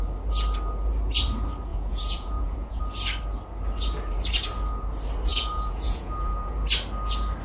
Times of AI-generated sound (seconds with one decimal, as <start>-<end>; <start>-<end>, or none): 1.7-2.8; 5.3-6.5